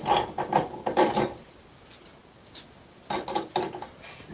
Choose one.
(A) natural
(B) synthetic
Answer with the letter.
A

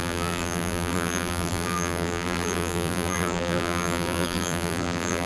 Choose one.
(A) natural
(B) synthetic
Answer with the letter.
B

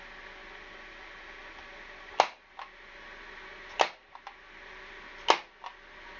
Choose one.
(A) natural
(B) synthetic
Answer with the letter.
A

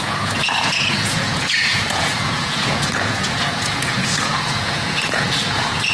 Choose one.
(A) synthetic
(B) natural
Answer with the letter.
A